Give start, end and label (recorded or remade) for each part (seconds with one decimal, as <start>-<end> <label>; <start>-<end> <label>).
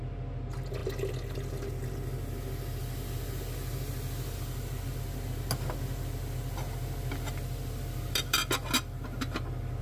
0.0-9.8 recorded